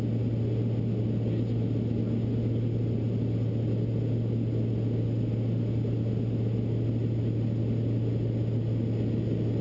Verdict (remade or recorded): recorded